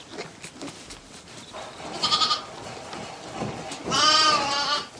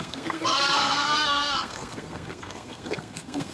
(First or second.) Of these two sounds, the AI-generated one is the second